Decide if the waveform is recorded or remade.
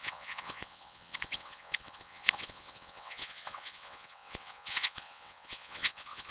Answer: remade